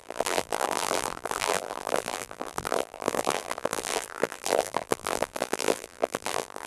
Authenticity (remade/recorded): remade